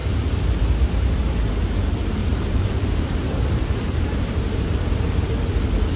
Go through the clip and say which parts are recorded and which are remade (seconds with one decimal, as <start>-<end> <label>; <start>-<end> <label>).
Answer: 0.0-2.2 recorded; 2.2-5.3 remade; 5.3-6.0 recorded